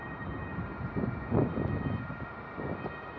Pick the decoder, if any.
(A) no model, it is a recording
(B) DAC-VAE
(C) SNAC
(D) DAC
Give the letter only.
A